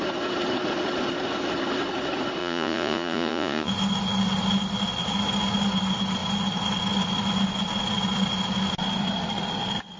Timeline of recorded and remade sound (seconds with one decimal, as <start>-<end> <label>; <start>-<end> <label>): 0.0-2.4 recorded; 2.4-3.7 remade; 3.7-10.0 recorded